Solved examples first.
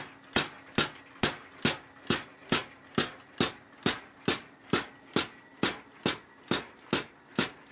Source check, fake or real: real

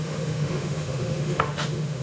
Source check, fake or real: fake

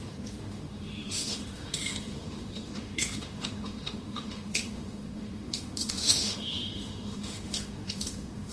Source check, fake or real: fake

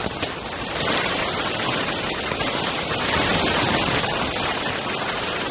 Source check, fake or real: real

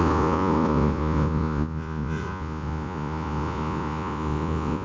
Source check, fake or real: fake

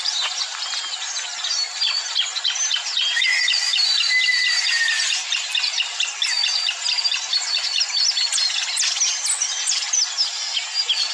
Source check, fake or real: real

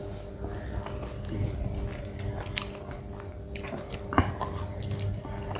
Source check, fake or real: real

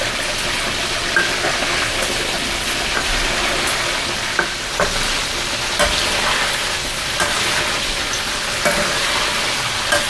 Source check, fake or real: real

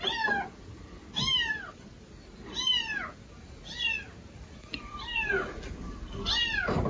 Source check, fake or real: real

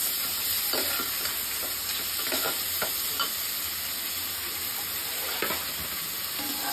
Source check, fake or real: real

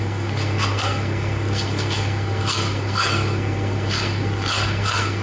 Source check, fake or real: fake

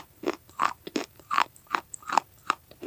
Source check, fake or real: fake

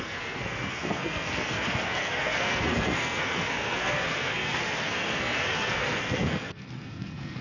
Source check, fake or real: fake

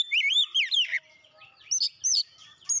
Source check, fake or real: real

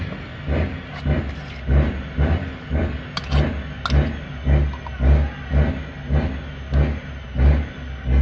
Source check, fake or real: real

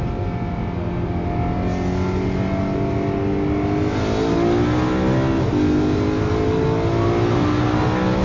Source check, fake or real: real